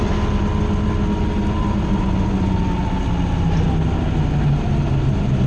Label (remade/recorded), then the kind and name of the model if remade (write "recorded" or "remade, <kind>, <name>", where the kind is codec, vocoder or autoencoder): recorded